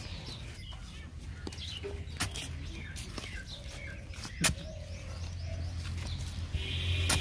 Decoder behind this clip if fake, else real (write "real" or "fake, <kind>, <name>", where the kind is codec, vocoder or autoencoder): real